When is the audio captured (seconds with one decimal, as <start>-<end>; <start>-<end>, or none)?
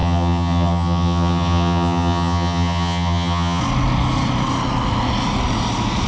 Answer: 3.6-6.1